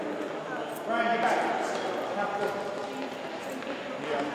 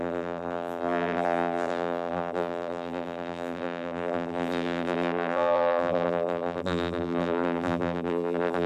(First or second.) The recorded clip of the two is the first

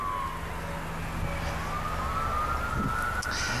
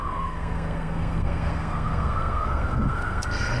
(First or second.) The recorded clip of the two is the first